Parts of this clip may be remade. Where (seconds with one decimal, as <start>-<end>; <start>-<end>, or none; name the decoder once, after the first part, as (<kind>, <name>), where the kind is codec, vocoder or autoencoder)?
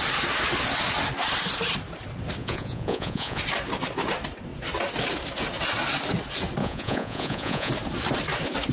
2.4-3.4 (vocoder, Vocos); 6.6-7.7